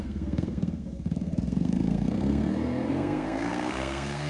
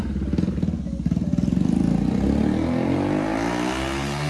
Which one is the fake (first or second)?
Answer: first